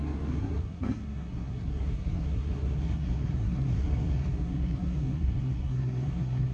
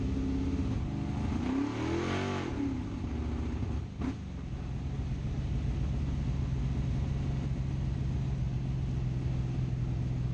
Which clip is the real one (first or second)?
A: second